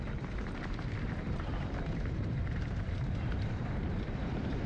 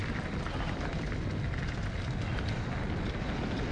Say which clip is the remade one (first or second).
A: first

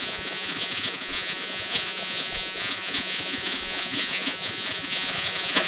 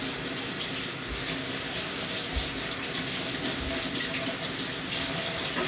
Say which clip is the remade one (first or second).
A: first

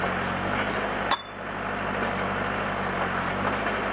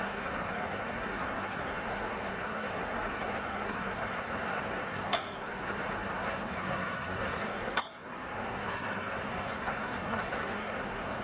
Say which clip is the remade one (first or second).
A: second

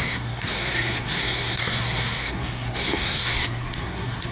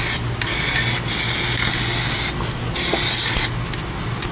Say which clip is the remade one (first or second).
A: first